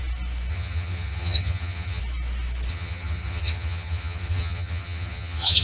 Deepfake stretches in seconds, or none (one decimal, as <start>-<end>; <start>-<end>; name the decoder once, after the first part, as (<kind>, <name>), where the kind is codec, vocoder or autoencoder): 0.5-2.0 (vocoder, HiFi-GAN); 2.7-5.6